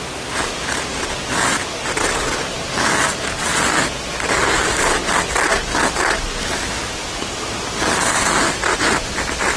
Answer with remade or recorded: recorded